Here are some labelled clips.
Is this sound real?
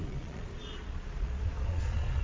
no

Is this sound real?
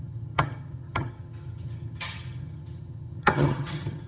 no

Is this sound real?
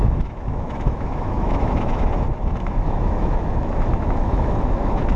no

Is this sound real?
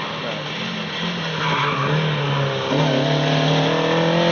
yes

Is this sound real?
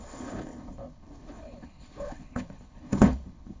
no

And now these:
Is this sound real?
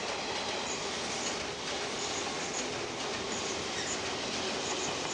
yes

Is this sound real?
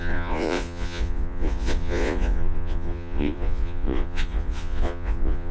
no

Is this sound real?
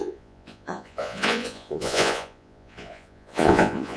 no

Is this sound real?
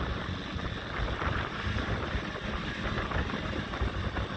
yes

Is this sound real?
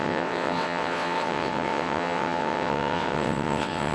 no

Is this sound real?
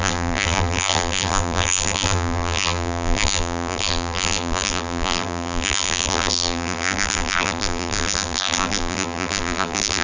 no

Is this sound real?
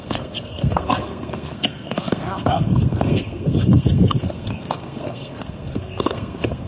no